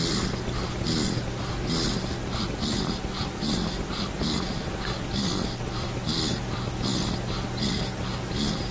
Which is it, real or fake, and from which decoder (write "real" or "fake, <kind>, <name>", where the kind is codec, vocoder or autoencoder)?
real